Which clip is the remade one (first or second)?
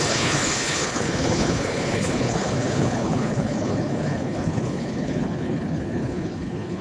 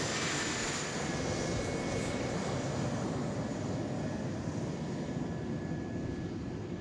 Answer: first